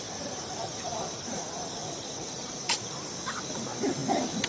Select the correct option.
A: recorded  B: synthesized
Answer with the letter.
A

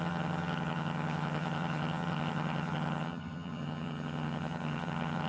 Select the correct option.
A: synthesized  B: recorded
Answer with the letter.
A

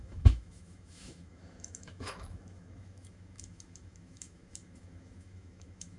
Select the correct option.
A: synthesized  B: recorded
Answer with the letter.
A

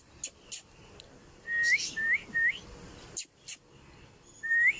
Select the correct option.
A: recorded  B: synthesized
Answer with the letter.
A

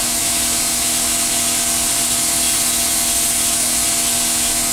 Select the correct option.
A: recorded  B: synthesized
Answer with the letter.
A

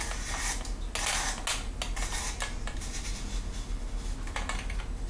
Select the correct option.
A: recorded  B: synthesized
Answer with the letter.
A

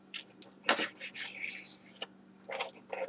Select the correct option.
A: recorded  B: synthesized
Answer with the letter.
A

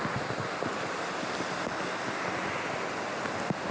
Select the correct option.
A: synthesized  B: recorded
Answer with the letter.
B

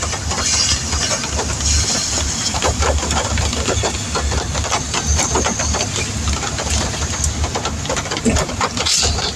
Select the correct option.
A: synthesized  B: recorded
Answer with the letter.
B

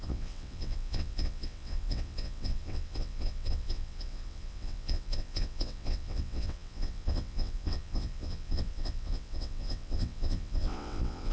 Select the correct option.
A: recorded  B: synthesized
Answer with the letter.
B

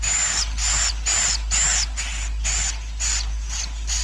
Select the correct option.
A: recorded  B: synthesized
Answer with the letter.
A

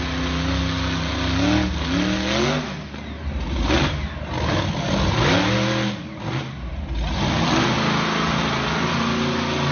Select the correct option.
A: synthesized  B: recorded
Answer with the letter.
B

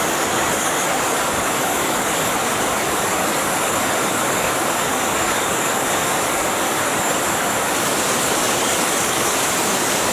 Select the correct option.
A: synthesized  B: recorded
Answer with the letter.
A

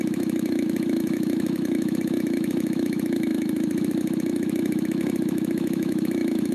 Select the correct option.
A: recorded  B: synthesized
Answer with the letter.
B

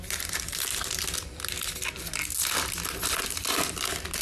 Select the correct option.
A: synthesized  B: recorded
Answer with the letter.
B